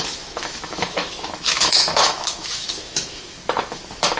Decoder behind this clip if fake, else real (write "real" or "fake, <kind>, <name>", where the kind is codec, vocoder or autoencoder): fake, autoencoder, DAC-VAE